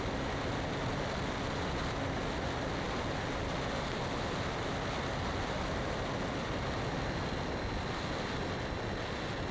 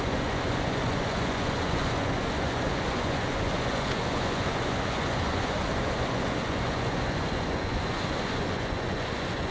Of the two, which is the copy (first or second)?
second